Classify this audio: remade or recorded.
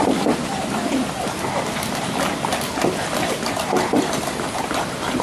remade